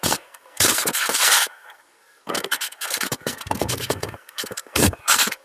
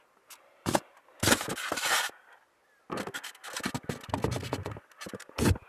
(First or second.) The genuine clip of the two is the second